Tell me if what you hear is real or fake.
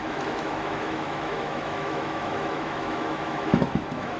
fake